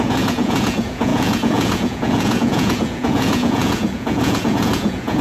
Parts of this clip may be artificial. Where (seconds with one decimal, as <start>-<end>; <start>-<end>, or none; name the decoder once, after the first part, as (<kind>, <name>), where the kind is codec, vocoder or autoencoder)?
0.0-5.2 (vocoder, Vocos)